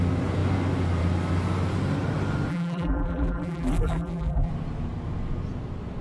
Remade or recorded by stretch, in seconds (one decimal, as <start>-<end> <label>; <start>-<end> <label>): 0.0-2.5 recorded; 2.5-4.5 remade; 4.5-6.0 recorded